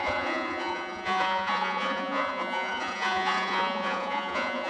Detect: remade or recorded remade